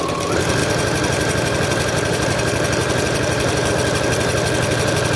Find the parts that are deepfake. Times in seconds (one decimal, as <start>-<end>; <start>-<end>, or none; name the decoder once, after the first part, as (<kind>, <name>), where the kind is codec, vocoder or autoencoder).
0.6-3.7 (vocoder, BigVGAN v2)